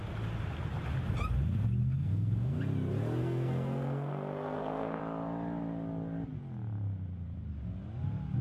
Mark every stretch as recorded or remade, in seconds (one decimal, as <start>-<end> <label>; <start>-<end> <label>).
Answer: 0.0-1.8 recorded; 1.8-2.6 remade; 2.6-3.2 recorded; 3.2-5.0 remade; 5.0-8.4 recorded